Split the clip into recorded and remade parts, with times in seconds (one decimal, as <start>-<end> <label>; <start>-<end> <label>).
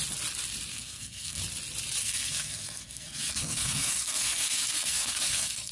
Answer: 0.0-0.7 recorded; 0.7-1.4 remade; 1.4-2.0 recorded; 2.0-5.7 remade